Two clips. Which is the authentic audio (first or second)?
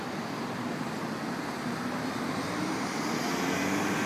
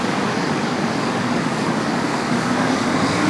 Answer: first